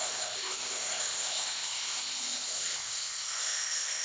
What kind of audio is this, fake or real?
fake